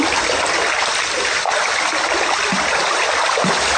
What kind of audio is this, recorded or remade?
recorded